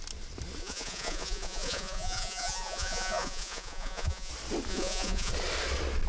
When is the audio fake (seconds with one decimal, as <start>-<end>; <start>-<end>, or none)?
0.6-4.3; 4.7-5.3